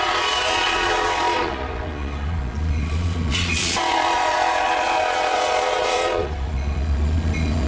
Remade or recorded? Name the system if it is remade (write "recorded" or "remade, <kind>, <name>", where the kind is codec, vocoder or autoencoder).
remade, vocoder, Vocos